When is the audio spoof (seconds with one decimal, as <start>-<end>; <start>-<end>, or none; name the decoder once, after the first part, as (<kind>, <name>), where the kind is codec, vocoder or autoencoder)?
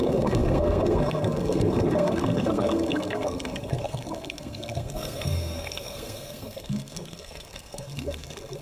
0.0-8.6 (codec, SNAC)